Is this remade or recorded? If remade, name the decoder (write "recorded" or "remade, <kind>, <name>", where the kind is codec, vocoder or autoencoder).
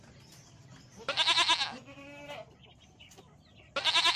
recorded